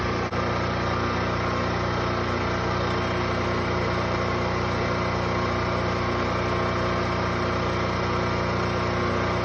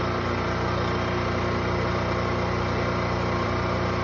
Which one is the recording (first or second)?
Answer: first